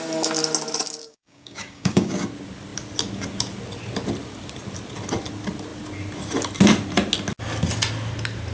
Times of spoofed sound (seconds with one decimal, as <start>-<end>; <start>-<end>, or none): 1.0-2.3